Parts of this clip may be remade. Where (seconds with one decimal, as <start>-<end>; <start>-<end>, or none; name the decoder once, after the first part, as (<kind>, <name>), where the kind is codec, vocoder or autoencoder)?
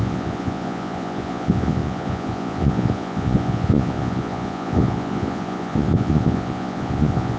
0.0-7.4 (vocoder, Vocos)